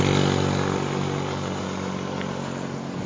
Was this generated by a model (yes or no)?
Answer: no